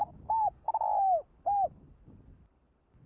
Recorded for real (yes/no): yes